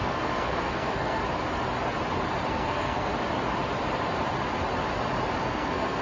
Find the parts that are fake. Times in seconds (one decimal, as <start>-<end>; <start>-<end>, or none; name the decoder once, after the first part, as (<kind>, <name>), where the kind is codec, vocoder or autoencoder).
0.0-1.2 (codec, SNAC); 2.5-3.1; 5.4-6.0